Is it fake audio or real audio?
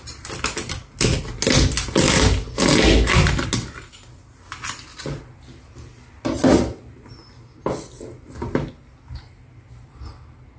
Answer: real